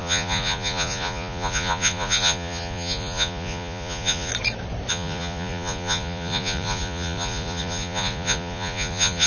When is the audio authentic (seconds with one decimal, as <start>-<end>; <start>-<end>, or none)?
4.3-4.9